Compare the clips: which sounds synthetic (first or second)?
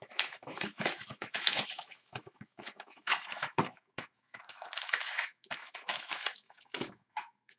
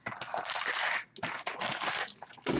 first